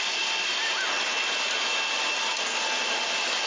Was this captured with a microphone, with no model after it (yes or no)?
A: yes